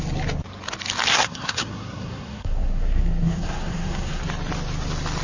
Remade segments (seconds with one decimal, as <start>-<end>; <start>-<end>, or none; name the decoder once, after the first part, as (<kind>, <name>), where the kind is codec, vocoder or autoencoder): 1.1-4.2 (codec, SNAC)

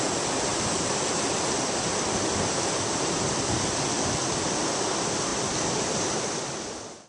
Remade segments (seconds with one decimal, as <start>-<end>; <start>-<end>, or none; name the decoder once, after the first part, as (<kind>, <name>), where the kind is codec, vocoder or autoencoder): none

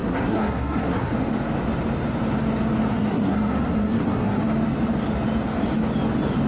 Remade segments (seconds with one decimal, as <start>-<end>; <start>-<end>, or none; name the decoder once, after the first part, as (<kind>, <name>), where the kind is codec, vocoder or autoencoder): 0.0-1.1 (codec, SNAC); 2.9-4.4

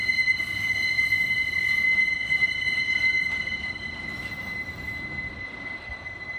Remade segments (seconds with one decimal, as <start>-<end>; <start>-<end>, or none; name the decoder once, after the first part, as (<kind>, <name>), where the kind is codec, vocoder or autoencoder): none

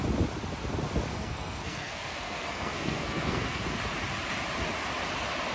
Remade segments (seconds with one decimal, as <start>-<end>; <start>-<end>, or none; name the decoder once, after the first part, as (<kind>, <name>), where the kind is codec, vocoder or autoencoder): 1.1-3.6 (codec, SNAC)

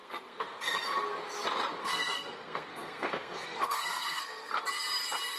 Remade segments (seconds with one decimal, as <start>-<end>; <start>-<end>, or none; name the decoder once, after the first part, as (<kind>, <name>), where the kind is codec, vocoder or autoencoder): 0.0-0.8 (codec, SNAC); 1.8-4.5

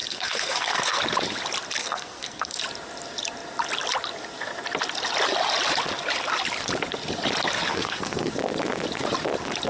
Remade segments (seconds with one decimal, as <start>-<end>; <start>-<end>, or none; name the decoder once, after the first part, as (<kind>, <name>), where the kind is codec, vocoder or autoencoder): 0.0-1.0 (codec, SNAC); 1.8-2.6; 7.7-8.3